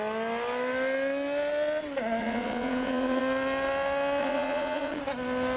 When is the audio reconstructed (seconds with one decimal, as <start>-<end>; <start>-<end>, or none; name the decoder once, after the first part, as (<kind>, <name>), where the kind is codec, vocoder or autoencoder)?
2.2-3.2 (vocoder, Vocos); 4.2-5.0